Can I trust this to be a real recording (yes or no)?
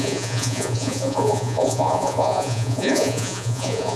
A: no